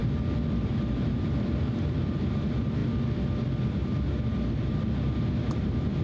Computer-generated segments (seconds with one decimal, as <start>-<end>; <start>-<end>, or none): 0.5-2.8; 5.5-6.0